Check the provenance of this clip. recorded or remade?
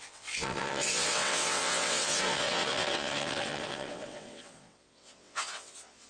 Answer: remade